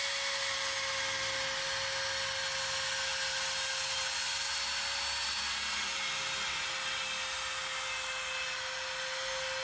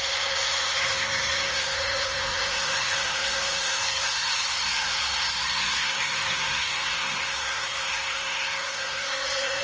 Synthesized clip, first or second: second